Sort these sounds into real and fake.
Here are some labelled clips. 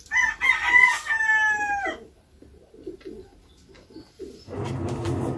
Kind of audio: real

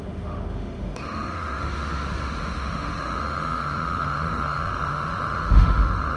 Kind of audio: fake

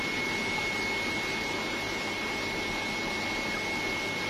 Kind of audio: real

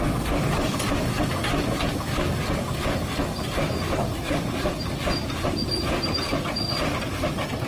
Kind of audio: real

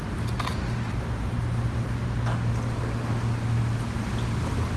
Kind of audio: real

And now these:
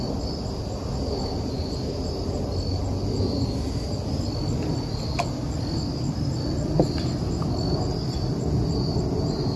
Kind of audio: real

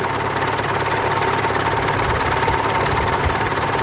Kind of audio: real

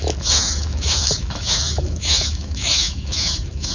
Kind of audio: fake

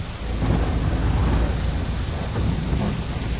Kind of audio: real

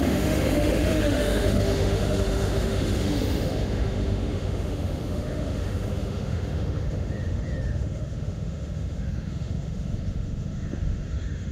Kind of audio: fake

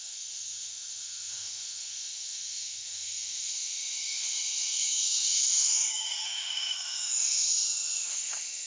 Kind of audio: fake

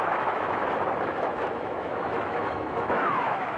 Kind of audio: fake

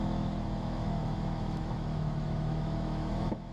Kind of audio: fake